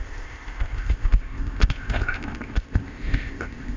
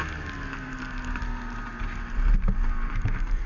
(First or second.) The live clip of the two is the second